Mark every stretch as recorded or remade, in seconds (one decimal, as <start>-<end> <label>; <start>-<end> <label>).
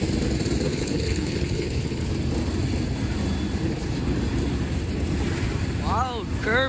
0.0-0.7 recorded; 0.7-2.1 remade; 2.1-6.7 recorded